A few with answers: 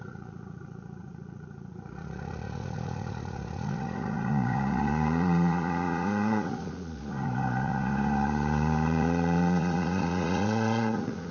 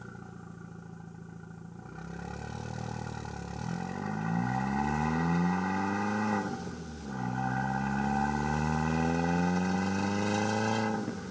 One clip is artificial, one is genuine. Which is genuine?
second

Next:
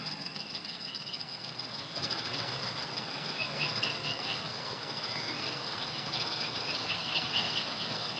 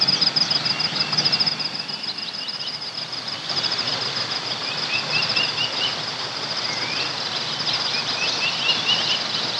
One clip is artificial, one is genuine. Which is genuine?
second